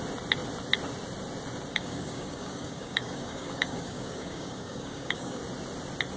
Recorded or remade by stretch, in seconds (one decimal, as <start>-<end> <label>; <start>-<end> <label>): 0.0-1.7 recorded; 1.7-5.4 remade; 5.4-6.2 recorded